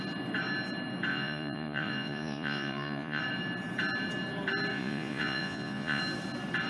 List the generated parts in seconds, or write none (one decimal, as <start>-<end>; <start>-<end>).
1.1-3.2; 4.7-6.0